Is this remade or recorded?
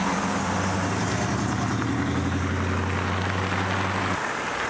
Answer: recorded